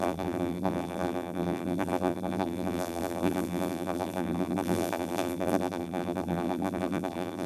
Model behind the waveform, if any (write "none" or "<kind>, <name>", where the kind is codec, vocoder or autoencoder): vocoder, BigVGAN v2